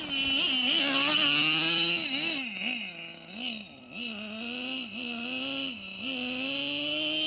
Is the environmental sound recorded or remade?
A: recorded